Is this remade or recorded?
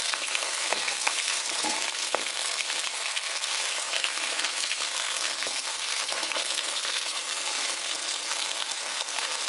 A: remade